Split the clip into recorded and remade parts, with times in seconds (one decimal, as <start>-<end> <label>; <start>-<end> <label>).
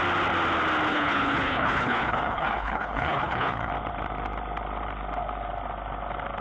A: 0.0-0.9 recorded; 0.9-3.7 remade; 3.7-6.4 recorded